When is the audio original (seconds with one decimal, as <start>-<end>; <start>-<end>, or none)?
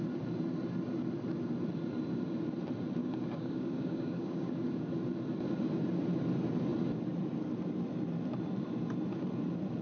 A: 0.0-3.0; 4.9-9.8